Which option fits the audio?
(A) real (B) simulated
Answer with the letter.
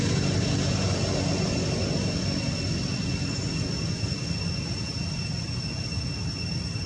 A